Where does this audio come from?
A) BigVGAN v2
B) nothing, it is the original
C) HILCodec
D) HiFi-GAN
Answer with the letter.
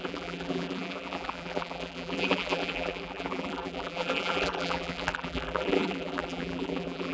A